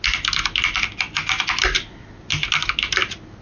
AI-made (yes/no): no